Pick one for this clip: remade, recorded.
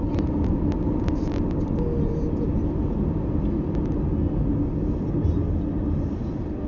recorded